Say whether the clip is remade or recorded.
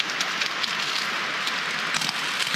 recorded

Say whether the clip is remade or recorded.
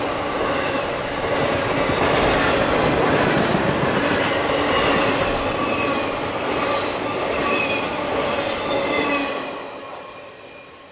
recorded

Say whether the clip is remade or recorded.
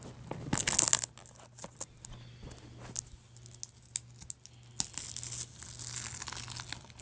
recorded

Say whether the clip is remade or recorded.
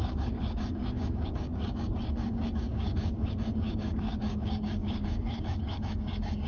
remade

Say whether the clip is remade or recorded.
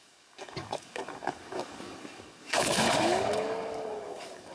remade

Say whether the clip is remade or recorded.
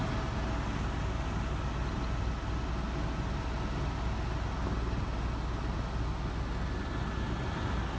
recorded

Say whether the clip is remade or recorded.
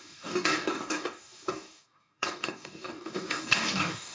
remade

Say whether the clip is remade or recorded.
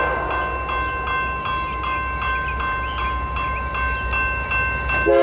recorded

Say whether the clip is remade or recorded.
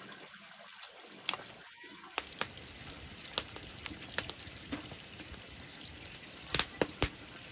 recorded